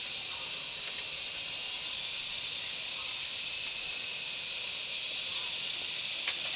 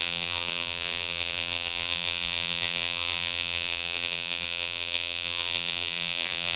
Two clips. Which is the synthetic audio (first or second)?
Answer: second